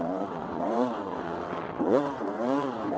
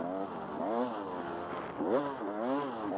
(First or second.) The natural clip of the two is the second